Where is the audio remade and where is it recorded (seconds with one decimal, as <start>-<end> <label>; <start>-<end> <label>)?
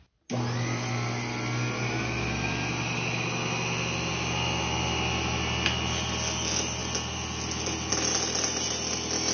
0.0-9.3 recorded